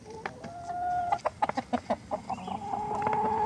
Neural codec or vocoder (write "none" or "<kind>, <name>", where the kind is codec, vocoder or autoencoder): none